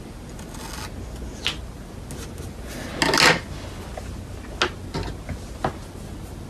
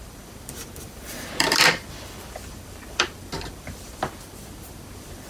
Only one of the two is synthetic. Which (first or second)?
second